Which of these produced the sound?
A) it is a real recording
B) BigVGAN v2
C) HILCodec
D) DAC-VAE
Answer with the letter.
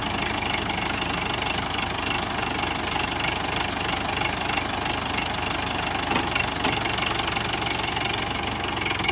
A